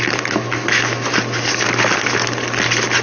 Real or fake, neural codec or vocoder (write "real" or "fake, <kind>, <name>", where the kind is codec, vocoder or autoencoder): real